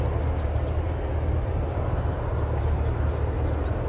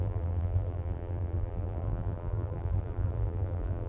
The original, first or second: first